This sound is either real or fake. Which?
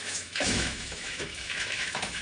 fake